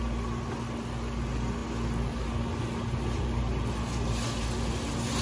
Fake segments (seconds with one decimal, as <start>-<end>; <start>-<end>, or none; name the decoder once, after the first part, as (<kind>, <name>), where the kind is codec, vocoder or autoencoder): none